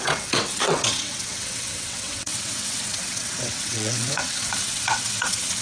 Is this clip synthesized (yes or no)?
yes